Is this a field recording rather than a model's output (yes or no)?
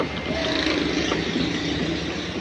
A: yes